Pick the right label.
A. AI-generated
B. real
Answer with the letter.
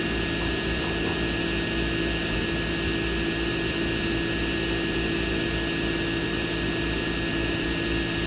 B